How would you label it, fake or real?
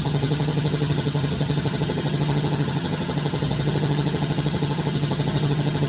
fake